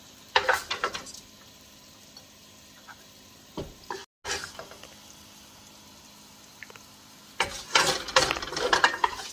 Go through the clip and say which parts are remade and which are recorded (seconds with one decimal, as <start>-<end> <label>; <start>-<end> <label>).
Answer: 0.0-4.0 remade; 4.0-9.3 recorded